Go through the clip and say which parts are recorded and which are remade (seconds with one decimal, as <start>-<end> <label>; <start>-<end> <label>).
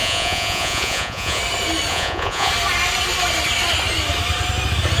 0.0-1.4 remade; 1.4-1.9 recorded; 1.9-2.5 remade; 2.5-5.0 recorded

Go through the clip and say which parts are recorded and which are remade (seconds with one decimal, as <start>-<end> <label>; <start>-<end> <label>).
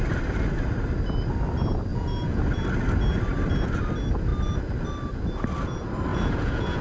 0.0-1.9 recorded; 1.9-2.4 remade; 2.4-6.1 recorded; 6.1-6.8 remade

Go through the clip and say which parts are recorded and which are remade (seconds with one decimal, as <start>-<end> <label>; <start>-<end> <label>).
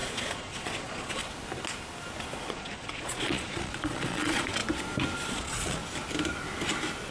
0.0-1.2 remade; 1.2-2.5 recorded; 2.5-4.6 remade; 4.6-5.3 recorded; 5.3-5.8 remade; 5.8-7.1 recorded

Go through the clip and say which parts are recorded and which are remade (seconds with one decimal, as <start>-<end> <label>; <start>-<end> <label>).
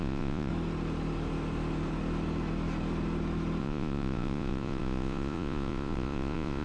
0.0-0.5 remade; 0.5-3.6 recorded; 3.6-6.6 remade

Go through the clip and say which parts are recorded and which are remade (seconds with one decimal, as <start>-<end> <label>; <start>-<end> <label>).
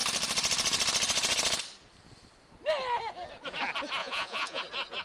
0.0-4.0 recorded; 4.0-4.6 remade; 4.6-5.0 recorded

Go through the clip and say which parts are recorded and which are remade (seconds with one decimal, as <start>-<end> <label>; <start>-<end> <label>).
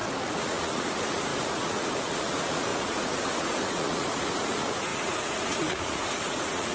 0.0-6.7 remade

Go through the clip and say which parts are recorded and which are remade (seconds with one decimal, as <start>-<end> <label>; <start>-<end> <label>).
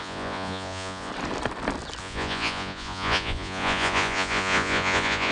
0.0-1.1 remade; 1.1-2.0 recorded; 2.0-5.3 remade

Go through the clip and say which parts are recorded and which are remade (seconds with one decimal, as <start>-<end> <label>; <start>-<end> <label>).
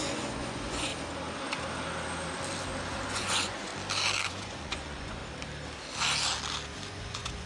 0.0-0.9 remade; 0.9-3.1 recorded; 3.1-3.7 remade; 3.7-4.3 recorded; 4.3-5.2 remade; 5.2-6.9 recorded; 6.9-7.5 remade